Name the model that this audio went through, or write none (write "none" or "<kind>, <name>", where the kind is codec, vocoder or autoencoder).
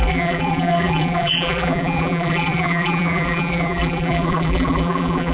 vocoder, BigVGAN v2